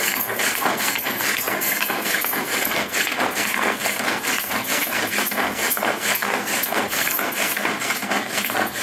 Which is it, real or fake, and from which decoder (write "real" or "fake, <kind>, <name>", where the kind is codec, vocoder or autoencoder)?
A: fake, codec, SNAC